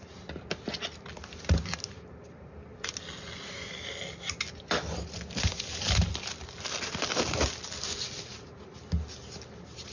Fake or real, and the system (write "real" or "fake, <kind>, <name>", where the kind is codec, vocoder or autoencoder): real